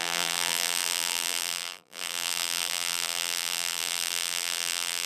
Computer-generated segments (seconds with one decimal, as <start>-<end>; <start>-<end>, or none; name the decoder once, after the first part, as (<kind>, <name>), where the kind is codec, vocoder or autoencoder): 0.0-5.1 (vocoder, BigVGAN v2)